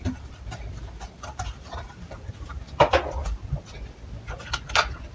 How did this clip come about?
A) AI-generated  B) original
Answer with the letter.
B